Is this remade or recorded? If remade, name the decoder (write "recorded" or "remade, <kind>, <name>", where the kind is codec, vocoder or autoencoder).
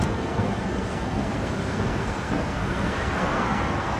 remade, codec, SNAC